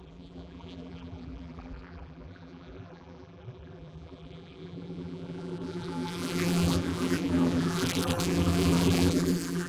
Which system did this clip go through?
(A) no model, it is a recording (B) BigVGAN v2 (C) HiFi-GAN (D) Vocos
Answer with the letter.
B